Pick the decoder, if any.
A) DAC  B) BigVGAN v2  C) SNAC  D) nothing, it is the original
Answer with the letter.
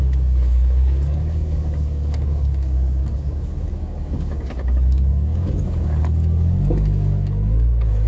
A